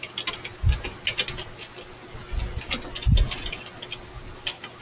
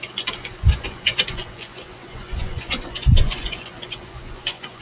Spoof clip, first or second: second